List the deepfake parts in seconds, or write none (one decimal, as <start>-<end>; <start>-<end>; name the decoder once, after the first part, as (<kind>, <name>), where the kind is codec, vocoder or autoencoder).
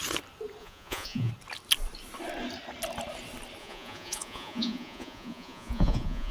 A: 0.6-1.3 (vocoder, Vocos); 3.6-6.3